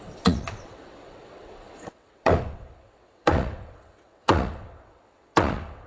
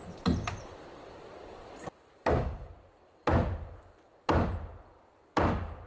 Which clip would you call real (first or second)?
second